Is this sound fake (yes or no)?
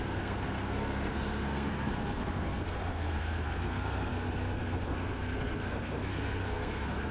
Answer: yes